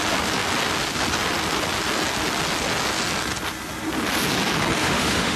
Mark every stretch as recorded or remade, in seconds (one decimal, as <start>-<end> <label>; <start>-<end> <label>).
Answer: 0.0-4.8 recorded; 4.8-5.4 remade